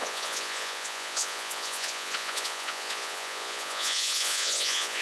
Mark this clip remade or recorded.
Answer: remade